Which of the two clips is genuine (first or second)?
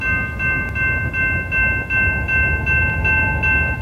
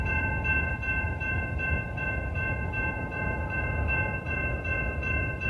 first